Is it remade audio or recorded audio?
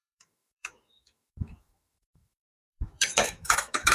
remade